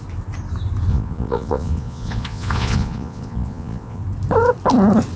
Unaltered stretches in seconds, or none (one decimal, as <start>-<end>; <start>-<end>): 0.0-0.9; 4.0-5.2

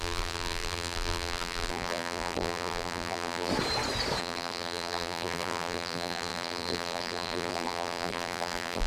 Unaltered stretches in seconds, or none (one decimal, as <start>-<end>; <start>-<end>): 3.5-4.2

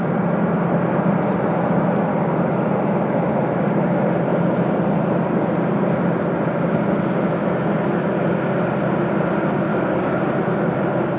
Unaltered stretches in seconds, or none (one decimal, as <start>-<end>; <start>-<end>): 0.0-2.1; 2.7-9.7; 10.2-11.2

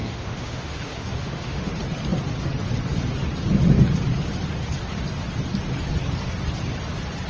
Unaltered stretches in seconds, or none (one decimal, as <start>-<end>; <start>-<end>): 1.7-7.3